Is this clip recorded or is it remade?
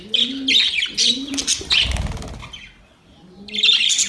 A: recorded